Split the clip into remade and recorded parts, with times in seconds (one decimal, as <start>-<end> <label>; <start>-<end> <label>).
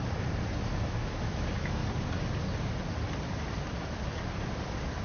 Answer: 0.0-0.7 recorded; 0.7-1.8 remade; 1.8-5.0 recorded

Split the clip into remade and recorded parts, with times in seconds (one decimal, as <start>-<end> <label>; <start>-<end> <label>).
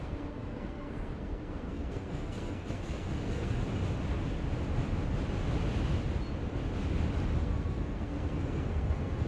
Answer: 0.0-3.6 remade; 3.6-7.4 recorded; 7.4-9.3 remade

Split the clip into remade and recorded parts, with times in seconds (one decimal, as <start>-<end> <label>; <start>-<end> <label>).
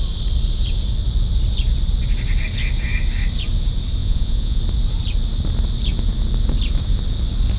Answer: 0.0-4.0 recorded; 4.0-4.6 remade; 4.6-7.6 recorded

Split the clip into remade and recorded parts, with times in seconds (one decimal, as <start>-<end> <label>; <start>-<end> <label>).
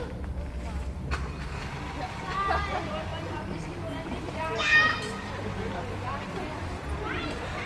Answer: 0.0-7.7 recorded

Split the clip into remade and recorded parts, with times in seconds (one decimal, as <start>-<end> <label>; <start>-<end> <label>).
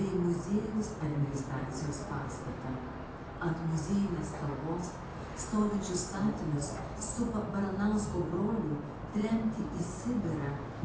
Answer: 0.0-1.1 recorded; 1.1-3.5 remade; 3.5-5.1 recorded; 5.1-6.8 remade; 6.8-8.9 recorded; 8.9-9.9 remade; 9.9-10.8 recorded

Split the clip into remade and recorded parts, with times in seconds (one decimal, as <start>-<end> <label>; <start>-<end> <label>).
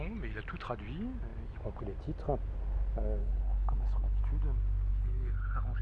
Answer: 0.0-3.2 recorded; 3.2-4.2 remade; 4.2-4.9 recorded; 4.9-5.8 remade